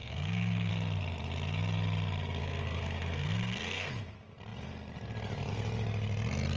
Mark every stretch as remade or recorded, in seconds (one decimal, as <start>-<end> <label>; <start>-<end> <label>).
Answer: 0.0-0.7 remade; 0.7-2.4 recorded; 2.4-3.9 remade; 3.9-6.6 recorded